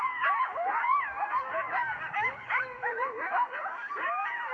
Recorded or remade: remade